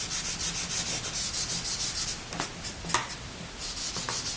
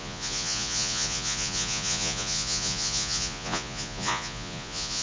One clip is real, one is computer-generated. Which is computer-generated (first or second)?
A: second